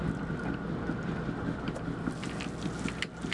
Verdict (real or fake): real